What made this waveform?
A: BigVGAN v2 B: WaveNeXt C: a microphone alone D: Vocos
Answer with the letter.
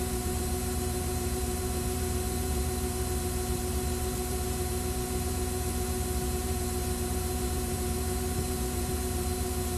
A